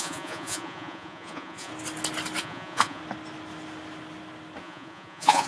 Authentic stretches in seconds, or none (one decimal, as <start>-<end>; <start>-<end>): 1.7-2.4; 3.0-4.6